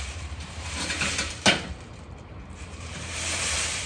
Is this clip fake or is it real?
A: fake